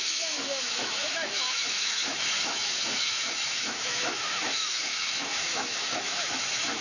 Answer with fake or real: fake